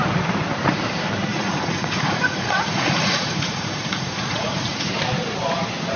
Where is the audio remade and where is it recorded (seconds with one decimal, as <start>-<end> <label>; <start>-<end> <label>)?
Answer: 0.0-1.3 recorded; 1.3-4.9 remade; 4.9-6.0 recorded